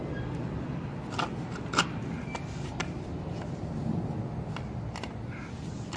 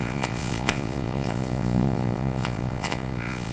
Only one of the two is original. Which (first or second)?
first